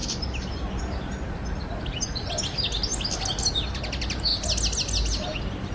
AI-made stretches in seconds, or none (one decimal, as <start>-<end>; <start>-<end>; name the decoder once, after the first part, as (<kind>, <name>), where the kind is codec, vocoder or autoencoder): none